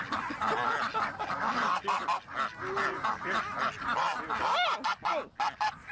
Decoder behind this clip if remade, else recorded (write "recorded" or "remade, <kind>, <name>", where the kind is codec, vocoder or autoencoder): recorded